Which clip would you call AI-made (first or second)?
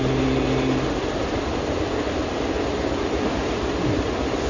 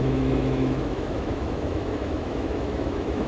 second